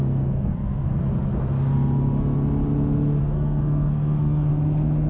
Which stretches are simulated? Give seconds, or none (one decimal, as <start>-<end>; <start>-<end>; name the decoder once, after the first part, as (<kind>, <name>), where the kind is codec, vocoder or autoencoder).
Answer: 0.0-1.0 (codec, SNAC); 3.2-4.5